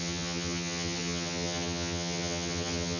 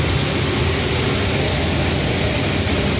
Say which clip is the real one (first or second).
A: second